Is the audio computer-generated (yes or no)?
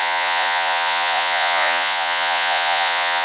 yes